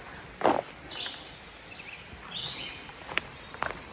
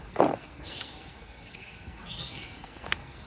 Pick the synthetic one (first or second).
second